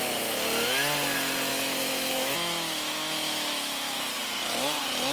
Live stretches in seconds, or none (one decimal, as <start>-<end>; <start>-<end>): 0.0-1.5; 4.0-5.1